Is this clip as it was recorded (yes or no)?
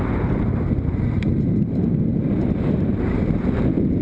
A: no